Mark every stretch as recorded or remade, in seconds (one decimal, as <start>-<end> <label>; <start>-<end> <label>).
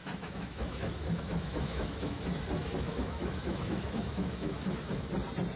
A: 0.0-2.2 remade; 2.2-2.6 recorded; 2.6-5.1 remade; 5.1-5.6 recorded